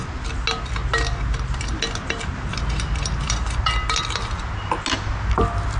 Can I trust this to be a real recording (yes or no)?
yes